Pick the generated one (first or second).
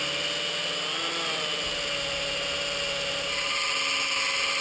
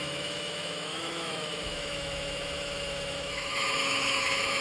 second